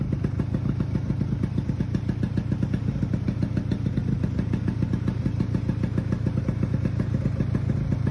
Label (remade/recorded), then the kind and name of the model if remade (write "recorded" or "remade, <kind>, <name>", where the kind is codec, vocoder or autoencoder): recorded